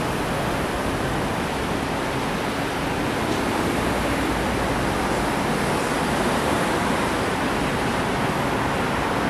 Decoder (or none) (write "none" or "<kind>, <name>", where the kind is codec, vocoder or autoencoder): none